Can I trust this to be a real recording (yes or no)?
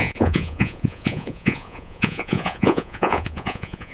no